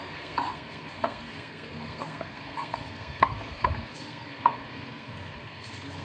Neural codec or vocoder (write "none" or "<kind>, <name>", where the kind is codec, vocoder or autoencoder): codec, SNAC